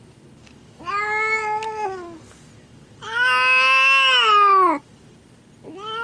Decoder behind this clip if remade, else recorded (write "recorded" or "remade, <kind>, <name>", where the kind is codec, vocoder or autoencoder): recorded